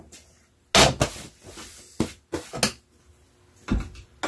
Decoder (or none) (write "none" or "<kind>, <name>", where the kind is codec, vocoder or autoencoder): none